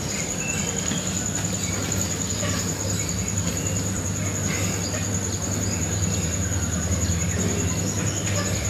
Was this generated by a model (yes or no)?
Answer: no